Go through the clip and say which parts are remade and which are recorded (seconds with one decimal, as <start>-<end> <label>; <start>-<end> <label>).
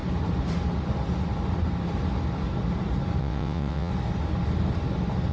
0.0-3.2 recorded; 3.2-3.9 remade; 3.9-5.3 recorded